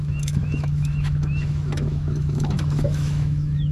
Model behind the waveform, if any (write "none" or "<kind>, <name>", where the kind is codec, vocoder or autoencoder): autoencoder, DAC-VAE